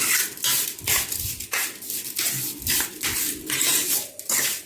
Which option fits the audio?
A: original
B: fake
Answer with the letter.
A